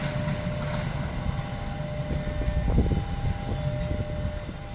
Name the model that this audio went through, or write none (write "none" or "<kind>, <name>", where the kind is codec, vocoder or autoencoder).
none